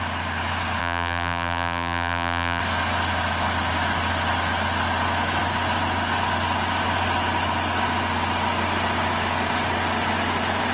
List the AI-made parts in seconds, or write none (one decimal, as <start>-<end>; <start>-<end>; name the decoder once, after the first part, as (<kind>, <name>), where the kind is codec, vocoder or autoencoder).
0.8-2.6 (vocoder, BigVGAN v2)